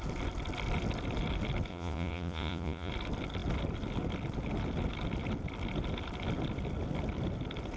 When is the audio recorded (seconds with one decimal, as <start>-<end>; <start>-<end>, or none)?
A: 0.0-1.7; 2.9-7.8